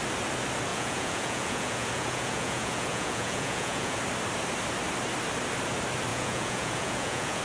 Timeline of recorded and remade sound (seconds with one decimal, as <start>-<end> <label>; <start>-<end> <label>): 0.0-0.7 recorded; 0.7-4.0 remade; 4.0-6.1 recorded; 6.1-7.4 remade